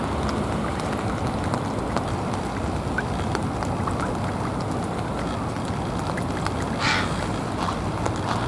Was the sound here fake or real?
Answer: real